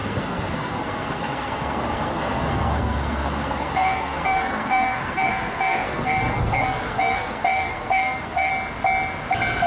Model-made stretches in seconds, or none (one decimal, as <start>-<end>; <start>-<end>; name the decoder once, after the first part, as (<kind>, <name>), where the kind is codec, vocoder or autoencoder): 0.0-8.5 (codec, SNAC)